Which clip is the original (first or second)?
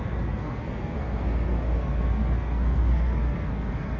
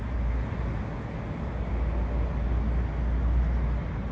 second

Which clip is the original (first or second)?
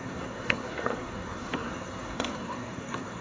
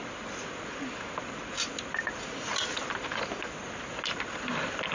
second